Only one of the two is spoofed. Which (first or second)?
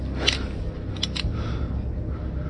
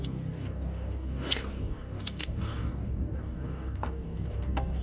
second